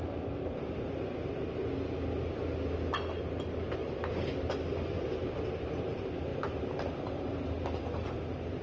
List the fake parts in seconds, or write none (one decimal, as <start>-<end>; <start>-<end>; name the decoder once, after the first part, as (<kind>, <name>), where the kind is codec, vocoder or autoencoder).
3.8-4.5 (vocoder, BigVGAN v2); 6.3-8.6